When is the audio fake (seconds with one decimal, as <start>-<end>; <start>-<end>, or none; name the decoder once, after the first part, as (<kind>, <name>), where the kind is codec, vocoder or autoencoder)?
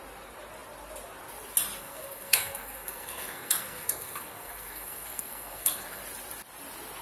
1.8-6.0 (codec, SNAC)